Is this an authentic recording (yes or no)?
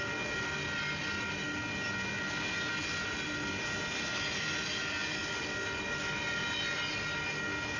yes